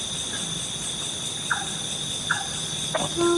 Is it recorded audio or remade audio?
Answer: recorded